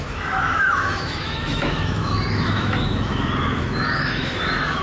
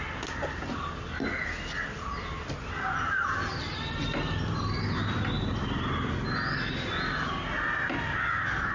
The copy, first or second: first